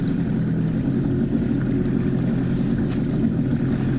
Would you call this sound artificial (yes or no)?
no